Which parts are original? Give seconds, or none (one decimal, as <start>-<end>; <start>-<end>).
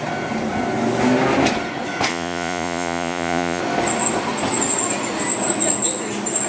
0.0-2.1; 3.6-6.5